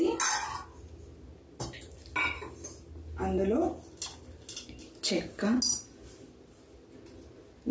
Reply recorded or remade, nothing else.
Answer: recorded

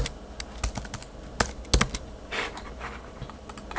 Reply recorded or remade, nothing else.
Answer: recorded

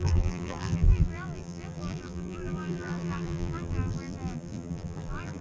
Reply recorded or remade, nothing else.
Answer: remade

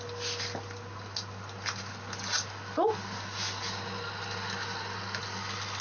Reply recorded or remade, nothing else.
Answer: recorded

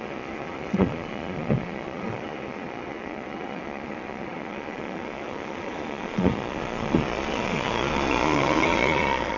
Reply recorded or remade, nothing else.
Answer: remade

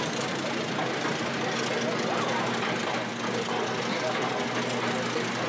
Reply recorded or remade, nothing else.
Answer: recorded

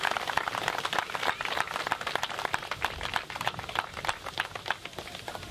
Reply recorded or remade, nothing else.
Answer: recorded